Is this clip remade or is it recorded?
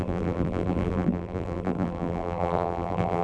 remade